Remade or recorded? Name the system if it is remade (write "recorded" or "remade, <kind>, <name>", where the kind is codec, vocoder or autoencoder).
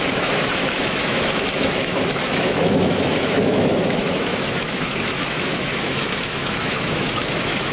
remade, autoencoder, DAC-VAE